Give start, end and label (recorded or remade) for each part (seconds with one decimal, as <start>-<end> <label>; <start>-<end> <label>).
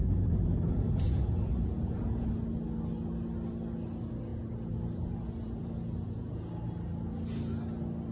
0.0-2.3 remade; 2.3-4.3 recorded; 4.3-6.4 remade; 6.4-8.1 recorded